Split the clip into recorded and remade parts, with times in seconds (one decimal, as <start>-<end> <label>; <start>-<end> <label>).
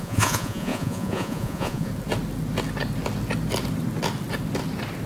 0.0-1.9 remade; 1.9-5.1 recorded